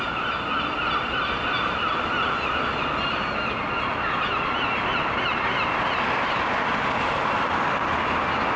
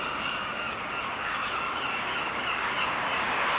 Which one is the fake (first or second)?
second